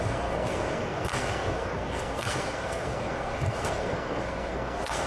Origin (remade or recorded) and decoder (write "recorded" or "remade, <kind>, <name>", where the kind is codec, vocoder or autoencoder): remade, codec, SNAC